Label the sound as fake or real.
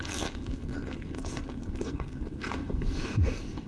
fake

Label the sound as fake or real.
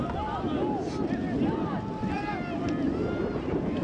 real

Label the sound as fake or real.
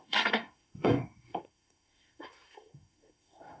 fake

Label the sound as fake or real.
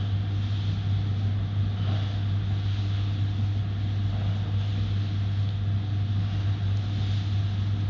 real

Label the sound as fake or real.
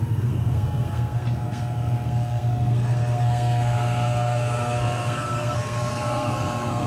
fake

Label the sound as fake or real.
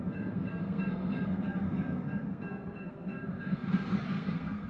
fake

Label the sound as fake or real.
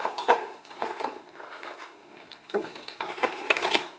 fake